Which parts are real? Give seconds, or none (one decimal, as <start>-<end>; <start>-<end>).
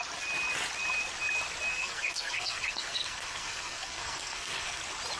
0.0-1.7; 4.8-5.2